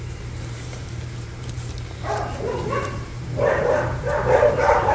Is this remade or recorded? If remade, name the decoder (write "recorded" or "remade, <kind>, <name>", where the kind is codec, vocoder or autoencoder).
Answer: remade, vocoder, BigVGAN v2